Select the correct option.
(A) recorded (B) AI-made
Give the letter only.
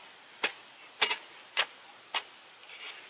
A